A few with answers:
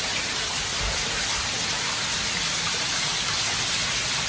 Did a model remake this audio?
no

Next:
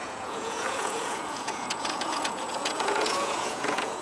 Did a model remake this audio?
yes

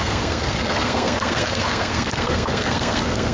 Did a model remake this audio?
yes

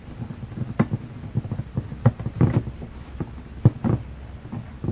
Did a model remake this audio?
no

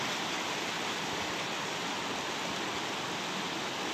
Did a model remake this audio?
no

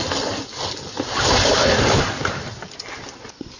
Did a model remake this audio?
no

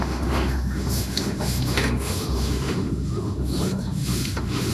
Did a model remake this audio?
yes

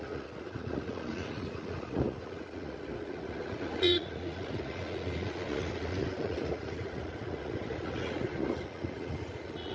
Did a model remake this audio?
yes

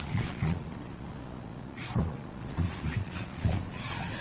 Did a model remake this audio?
yes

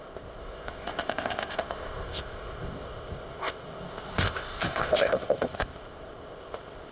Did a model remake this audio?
yes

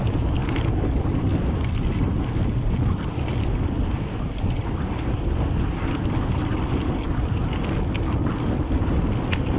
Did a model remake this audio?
no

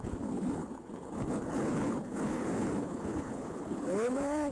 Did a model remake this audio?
yes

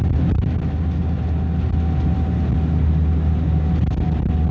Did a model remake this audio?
no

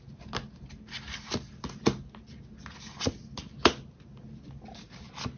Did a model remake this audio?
no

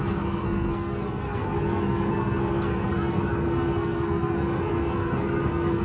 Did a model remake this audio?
yes